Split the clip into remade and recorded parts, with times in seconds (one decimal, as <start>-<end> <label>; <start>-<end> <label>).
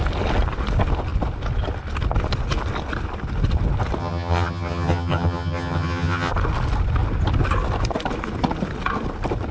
0.0-4.0 recorded; 4.0-6.3 remade; 6.3-9.5 recorded